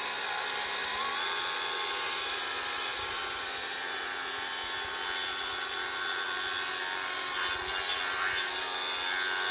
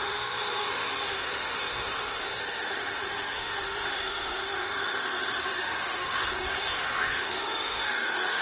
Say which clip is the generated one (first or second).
second